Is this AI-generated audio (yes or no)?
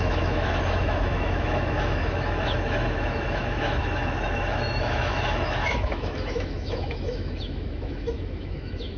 yes